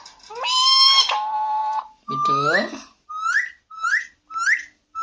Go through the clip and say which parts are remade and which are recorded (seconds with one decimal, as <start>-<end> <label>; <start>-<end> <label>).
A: 0.0-5.0 recorded